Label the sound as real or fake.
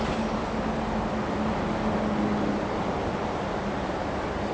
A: real